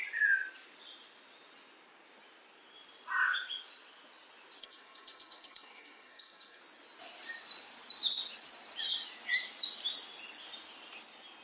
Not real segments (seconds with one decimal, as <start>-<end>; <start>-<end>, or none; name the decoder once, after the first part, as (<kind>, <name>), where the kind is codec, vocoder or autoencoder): 4.6-6.6 (codec, SNAC)